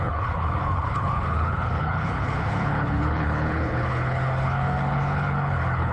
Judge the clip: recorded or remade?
remade